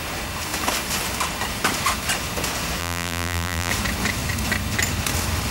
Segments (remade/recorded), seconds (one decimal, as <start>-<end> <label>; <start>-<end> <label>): 0.0-2.8 recorded; 2.8-3.7 remade; 3.7-5.5 recorded